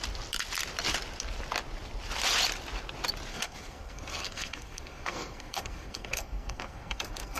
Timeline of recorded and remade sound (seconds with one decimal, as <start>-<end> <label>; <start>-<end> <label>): 0.0-3.3 recorded; 3.3-7.4 remade